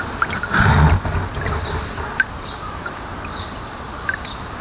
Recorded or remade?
recorded